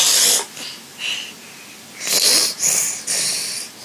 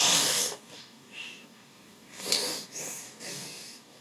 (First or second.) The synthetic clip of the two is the second